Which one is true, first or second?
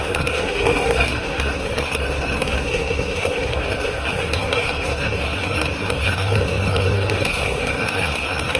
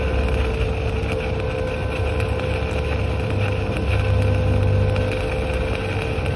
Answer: second